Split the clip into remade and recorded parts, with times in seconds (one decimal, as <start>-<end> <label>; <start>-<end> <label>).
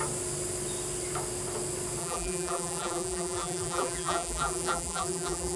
0.0-2.0 recorded; 2.0-5.6 remade